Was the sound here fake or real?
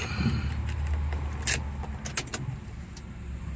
real